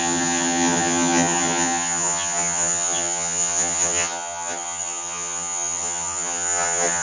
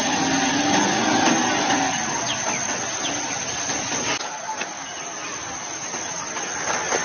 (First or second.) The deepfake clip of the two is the first